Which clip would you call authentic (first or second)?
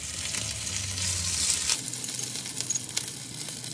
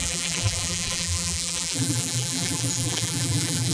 first